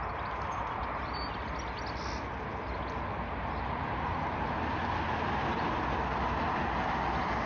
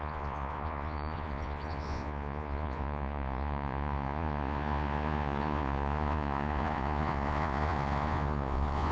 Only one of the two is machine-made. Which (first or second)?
second